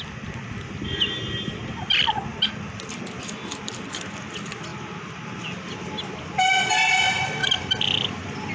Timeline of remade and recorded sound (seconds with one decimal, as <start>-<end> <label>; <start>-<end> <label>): 0.0-8.5 recorded